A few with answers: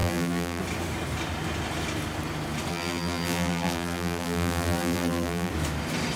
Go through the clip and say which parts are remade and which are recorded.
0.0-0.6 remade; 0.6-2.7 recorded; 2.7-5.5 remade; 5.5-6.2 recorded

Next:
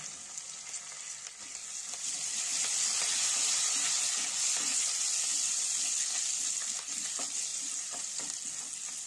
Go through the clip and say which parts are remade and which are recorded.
0.0-7.5 recorded; 7.5-8.2 remade; 8.2-9.1 recorded

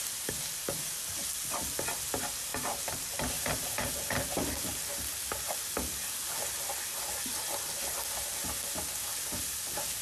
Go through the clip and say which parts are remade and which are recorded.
0.0-2.5 recorded; 2.5-3.1 remade; 3.1-10.0 recorded

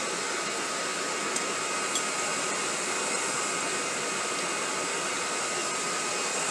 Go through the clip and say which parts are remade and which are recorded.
0.0-5.6 recorded; 5.6-6.5 remade

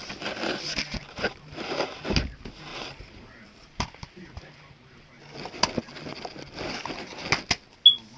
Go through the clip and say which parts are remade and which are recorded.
0.0-2.0 remade; 2.0-2.7 recorded; 2.7-5.2 remade; 5.2-8.2 recorded

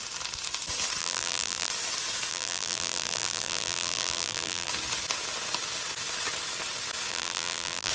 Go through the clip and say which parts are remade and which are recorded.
0.0-1.0 recorded; 1.0-1.7 remade; 1.7-2.3 recorded; 2.3-4.7 remade; 4.7-7.1 recorded; 7.1-7.9 remade

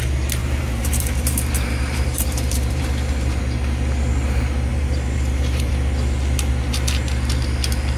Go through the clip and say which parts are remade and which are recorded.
0.0-0.4 recorded; 0.4-3.4 remade; 3.4-4.7 recorded; 4.7-5.7 remade; 5.7-8.0 recorded